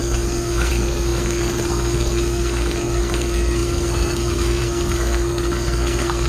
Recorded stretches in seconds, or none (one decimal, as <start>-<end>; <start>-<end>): none